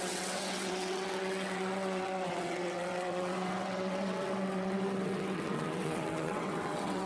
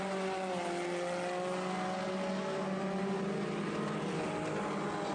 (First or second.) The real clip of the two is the second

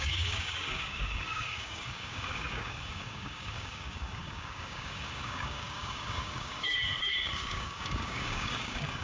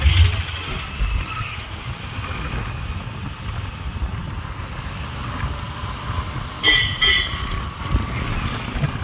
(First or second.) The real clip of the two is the second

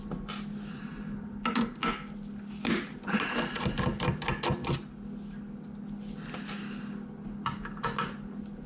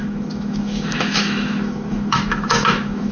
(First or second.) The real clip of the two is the first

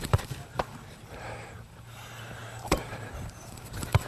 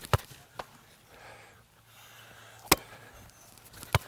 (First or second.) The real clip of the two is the second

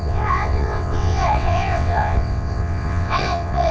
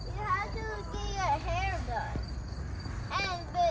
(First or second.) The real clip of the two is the second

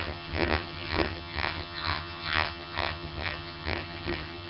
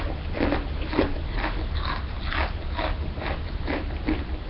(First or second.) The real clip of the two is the second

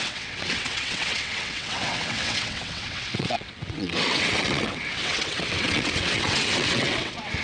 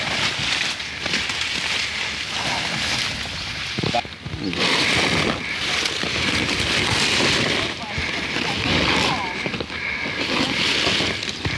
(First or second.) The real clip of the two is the second